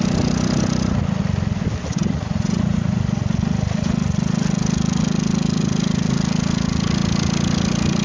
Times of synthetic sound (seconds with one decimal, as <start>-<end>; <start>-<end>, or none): 1.9-3.0